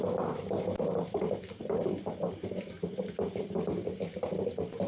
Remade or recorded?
recorded